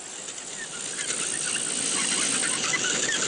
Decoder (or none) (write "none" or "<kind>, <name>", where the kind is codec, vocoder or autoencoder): none